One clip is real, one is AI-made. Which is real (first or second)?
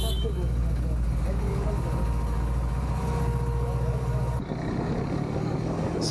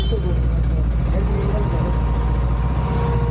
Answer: second